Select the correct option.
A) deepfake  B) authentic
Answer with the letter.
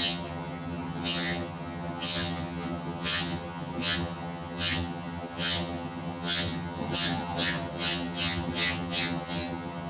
A